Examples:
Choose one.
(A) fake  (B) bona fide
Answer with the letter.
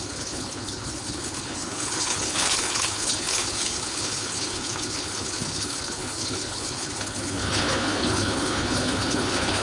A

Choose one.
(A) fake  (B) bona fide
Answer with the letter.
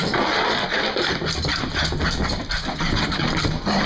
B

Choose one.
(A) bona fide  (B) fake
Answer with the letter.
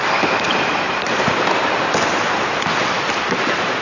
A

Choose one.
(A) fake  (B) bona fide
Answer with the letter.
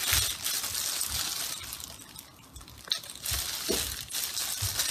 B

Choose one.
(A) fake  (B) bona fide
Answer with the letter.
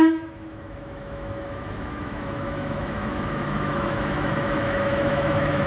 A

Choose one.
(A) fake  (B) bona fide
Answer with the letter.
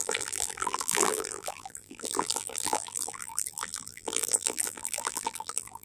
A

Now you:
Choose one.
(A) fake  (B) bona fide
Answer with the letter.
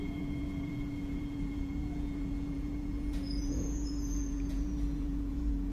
A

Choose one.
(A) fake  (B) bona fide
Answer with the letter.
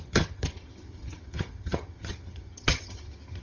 A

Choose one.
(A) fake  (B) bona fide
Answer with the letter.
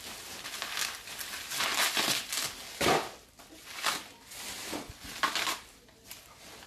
B